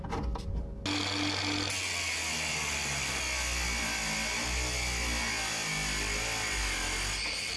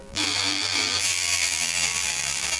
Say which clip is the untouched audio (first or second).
first